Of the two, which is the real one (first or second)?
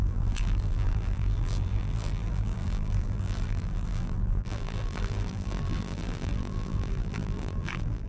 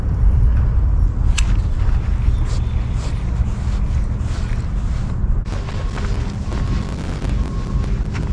second